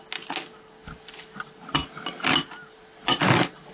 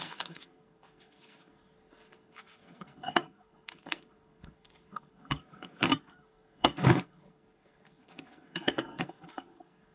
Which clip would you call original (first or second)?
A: first